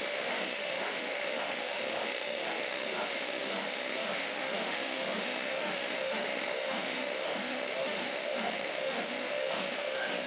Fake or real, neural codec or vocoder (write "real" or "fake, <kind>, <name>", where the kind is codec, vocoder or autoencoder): fake, autoencoder, DAC-VAE